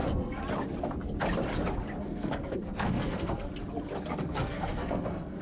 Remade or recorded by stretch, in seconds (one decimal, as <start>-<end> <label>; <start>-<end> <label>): 0.0-0.4 remade; 0.4-2.0 recorded; 2.0-3.5 remade; 3.5-4.1 recorded; 4.1-5.4 remade